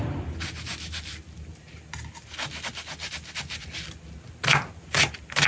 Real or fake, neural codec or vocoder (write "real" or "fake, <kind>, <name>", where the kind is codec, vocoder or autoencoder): real